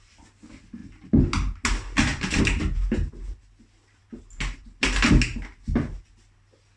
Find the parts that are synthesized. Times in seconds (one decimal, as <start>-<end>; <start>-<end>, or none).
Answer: none